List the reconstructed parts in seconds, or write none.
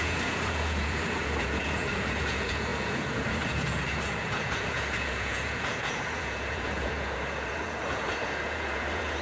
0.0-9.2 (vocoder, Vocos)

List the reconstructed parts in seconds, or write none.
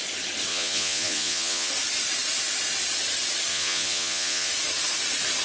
0.5-1.7 (vocoder, Vocos); 3.5-4.5